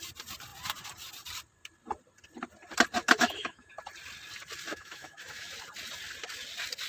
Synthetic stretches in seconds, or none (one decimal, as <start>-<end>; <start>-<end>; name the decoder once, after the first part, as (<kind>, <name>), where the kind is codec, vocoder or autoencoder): 3.0-3.7 (autoencoder, DAC-VAE); 4.7-5.5